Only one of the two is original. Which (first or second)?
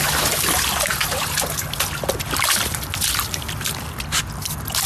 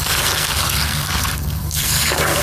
first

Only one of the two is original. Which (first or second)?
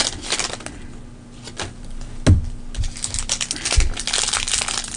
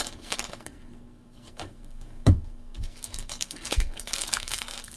first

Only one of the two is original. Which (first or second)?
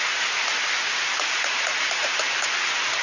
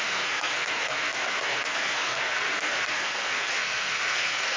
first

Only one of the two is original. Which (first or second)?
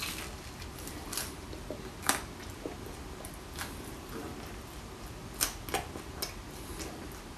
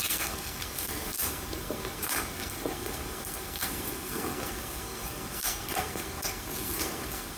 first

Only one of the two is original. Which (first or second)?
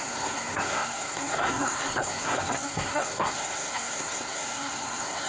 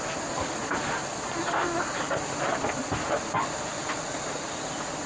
second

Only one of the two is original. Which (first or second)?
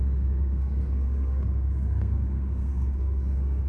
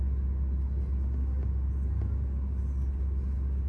second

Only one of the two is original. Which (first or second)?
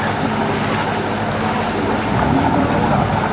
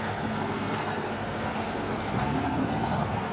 first